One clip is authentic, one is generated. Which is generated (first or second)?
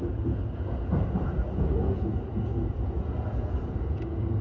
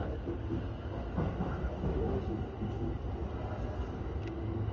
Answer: first